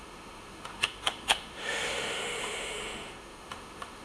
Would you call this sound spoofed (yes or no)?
yes